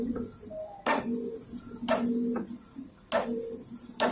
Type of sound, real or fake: real